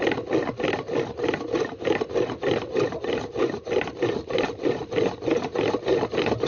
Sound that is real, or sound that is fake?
real